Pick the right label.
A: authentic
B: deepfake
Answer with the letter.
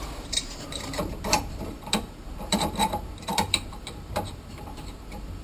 B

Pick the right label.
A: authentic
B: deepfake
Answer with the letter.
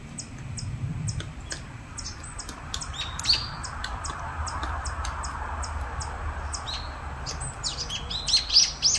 A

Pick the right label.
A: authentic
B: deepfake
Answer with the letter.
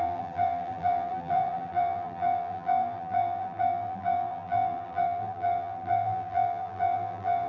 B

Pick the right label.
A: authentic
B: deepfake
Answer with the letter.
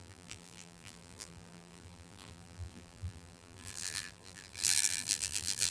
B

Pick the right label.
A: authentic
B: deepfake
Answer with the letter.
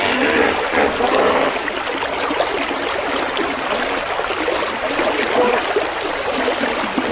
A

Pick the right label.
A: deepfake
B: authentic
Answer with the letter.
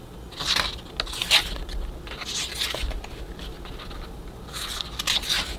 B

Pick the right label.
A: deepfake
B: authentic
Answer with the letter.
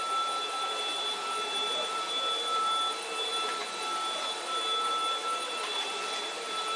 A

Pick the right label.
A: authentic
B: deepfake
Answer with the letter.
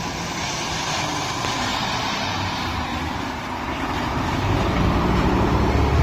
B